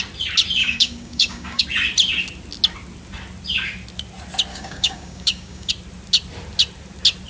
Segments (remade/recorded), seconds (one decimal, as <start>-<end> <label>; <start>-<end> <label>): 0.0-0.6 recorded; 0.6-1.6 remade; 1.6-4.5 recorded; 4.5-5.7 remade; 5.7-7.3 recorded

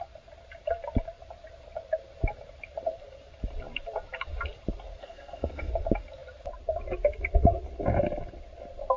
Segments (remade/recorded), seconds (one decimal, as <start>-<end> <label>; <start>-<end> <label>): 0.0-5.0 recorded; 5.0-5.7 remade; 5.7-9.0 recorded

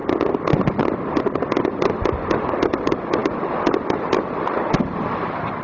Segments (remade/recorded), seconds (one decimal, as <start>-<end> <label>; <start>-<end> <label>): 0.0-5.6 recorded

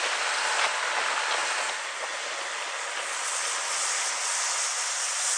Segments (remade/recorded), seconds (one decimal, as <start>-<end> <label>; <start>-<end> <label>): 0.0-5.4 recorded